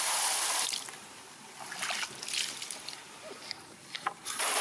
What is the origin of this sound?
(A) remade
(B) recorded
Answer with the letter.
A